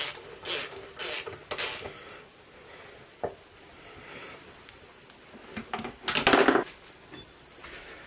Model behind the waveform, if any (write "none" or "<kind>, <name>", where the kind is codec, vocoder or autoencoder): none